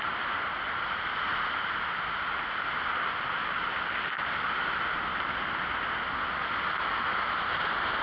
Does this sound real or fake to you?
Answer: real